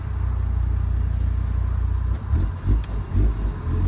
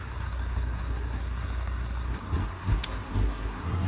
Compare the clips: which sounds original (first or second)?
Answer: first